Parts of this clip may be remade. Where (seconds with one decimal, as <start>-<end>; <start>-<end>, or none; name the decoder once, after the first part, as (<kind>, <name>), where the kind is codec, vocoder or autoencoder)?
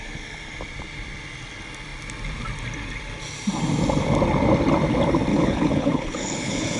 5.3-6.8 (codec, HILCodec)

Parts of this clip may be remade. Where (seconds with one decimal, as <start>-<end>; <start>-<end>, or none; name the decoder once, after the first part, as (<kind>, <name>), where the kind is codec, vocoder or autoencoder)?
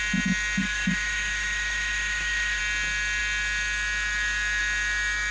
0.6-2.6 (autoencoder, DAC-VAE)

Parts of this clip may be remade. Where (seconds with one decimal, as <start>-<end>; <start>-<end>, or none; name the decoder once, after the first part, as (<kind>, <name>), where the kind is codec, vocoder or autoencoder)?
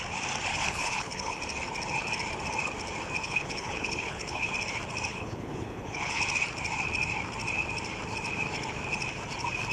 0.5-1.4 (codec, HILCodec); 3.2-4.5; 5.1-6.2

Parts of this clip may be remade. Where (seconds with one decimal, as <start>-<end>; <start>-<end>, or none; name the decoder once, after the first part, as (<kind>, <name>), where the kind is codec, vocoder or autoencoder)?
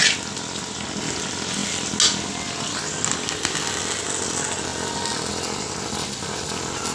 none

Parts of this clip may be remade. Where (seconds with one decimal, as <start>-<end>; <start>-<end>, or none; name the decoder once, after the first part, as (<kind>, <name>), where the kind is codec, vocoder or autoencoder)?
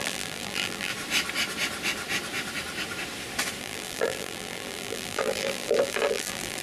0.0-0.9 (vocoder, BigVGAN v2); 3.6-6.6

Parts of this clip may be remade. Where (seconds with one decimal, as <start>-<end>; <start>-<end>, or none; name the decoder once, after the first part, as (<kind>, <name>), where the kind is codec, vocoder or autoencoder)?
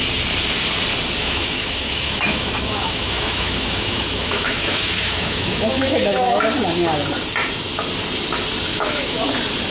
1.2-6.4 (autoencoder, DAC-VAE); 8.7-9.2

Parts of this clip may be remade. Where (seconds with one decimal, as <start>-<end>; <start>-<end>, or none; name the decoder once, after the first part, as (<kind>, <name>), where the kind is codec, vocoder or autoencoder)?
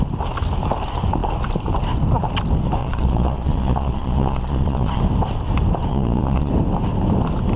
2.8-5.0 (vocoder, Vocos); 5.9-6.5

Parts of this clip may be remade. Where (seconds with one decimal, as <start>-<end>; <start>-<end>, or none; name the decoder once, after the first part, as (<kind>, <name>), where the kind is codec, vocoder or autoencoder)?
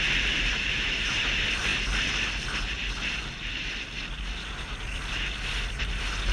none